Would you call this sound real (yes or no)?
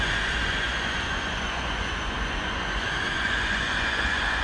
no